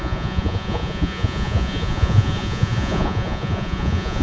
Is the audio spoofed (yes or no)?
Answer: yes